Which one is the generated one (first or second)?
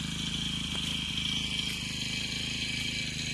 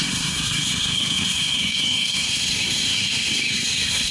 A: second